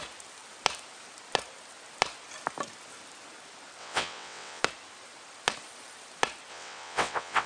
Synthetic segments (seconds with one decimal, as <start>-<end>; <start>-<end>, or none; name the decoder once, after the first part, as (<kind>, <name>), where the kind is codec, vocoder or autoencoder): 3.8-4.6 (vocoder, WaveNeXt); 6.5-7.5